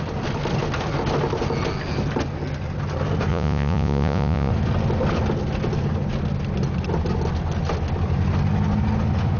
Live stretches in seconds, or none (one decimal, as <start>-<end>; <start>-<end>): 0.0-3.3; 4.5-9.4